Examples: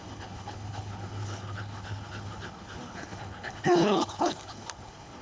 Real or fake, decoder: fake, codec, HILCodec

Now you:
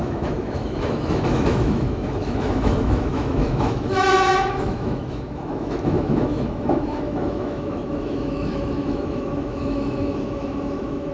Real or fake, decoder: fake, autoencoder, DAC-VAE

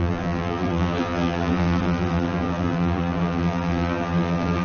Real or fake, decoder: fake, vocoder, BigVGAN v2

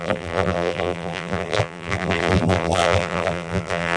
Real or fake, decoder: fake, vocoder, BigVGAN v2